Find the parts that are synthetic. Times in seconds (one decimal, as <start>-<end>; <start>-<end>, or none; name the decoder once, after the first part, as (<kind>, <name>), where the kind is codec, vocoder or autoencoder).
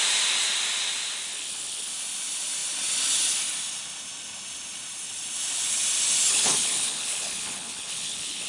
1.3-1.9 (codec, HILCodec); 6.3-8.5